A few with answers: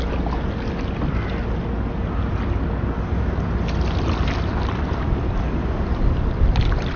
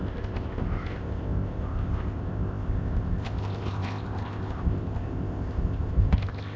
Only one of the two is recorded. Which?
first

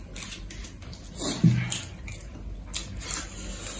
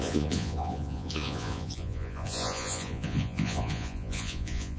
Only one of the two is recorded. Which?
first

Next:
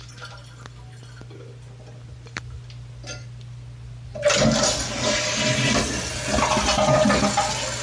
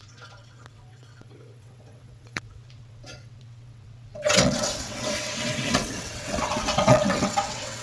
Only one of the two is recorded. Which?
first